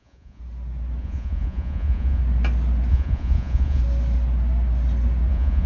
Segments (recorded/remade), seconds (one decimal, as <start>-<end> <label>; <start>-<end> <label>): 0.0-0.4 remade; 0.4-1.0 recorded; 1.0-2.2 remade; 2.2-2.9 recorded; 2.9-3.8 remade; 3.8-5.3 recorded; 5.3-5.7 remade